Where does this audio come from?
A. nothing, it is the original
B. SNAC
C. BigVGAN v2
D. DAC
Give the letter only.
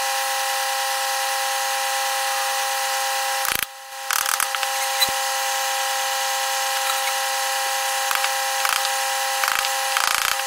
A